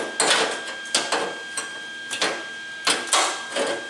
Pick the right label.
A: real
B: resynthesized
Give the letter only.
A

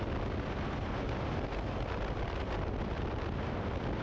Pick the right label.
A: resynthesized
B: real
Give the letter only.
B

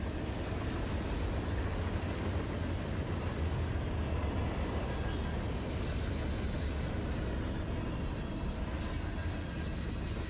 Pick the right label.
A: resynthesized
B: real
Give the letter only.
B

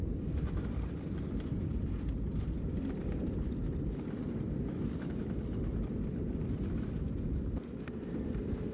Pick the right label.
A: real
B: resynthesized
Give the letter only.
B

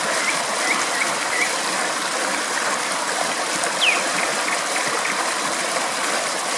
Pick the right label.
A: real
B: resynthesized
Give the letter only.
B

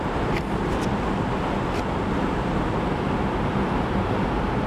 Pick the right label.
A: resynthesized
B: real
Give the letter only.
A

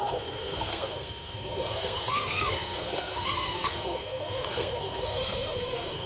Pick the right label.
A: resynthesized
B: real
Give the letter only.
A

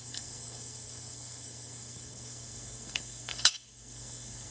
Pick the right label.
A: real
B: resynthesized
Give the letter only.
B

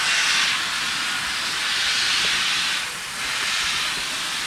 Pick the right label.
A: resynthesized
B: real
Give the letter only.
B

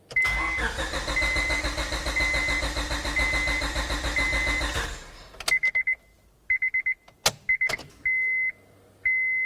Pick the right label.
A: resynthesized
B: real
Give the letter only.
B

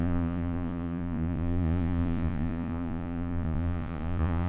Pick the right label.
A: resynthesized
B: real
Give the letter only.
A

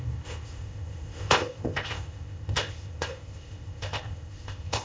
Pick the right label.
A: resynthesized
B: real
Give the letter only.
A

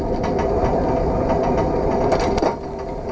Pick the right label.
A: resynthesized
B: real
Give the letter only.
B